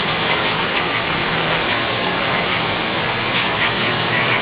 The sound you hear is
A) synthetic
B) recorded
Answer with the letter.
A